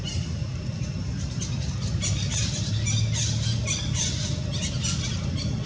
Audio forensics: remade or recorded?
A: recorded